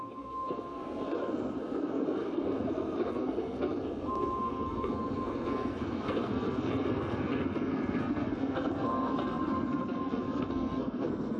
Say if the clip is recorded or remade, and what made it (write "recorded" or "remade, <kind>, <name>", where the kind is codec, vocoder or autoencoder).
remade, codec, SNAC